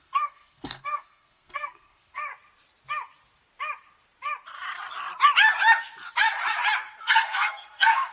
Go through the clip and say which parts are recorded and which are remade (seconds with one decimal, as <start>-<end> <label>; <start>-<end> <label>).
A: 0.0-2.3 remade; 2.3-7.0 recorded; 7.0-8.1 remade